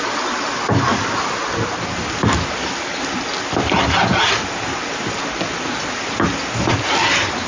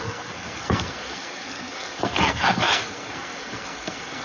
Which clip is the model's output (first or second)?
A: second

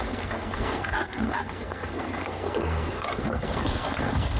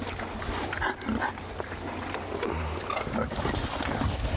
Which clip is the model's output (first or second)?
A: first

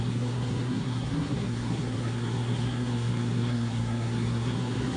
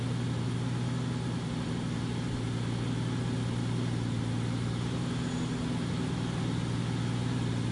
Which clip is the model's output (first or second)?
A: first